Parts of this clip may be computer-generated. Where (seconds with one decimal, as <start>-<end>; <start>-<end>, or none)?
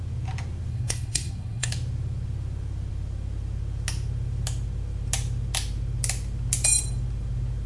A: 0.7-1.7